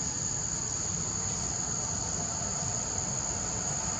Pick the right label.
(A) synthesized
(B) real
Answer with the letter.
B